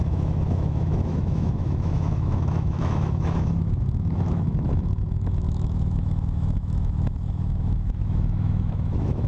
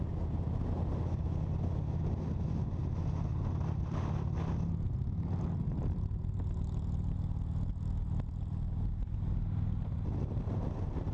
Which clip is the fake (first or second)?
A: first